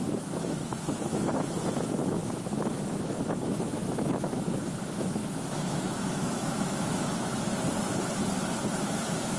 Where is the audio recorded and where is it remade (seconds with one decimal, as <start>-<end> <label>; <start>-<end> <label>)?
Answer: 0.0-7.5 remade; 7.5-8.7 recorded; 8.7-9.4 remade